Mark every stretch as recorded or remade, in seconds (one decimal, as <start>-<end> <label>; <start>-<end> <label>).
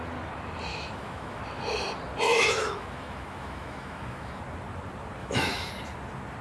0.0-0.7 recorded; 0.7-1.4 remade; 1.4-2.3 recorded; 2.3-4.4 remade; 4.4-5.2 recorded; 5.2-5.7 remade; 5.7-6.4 recorded